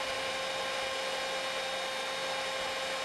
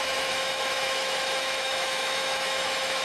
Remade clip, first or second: second